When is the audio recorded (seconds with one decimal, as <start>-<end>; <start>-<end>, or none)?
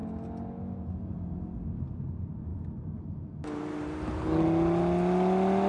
0.0-5.7